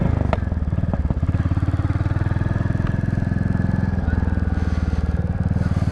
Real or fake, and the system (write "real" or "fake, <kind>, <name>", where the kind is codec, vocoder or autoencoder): real